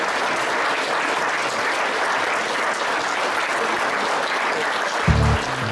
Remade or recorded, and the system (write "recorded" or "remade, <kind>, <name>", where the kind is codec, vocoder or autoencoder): recorded